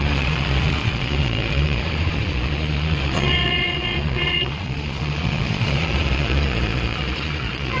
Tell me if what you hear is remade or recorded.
remade